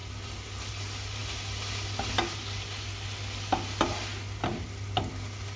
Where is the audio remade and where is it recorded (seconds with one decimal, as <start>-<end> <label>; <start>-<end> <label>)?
0.0-5.6 recorded